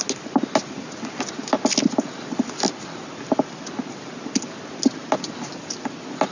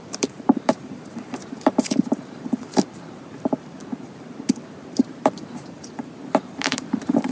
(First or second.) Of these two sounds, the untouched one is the first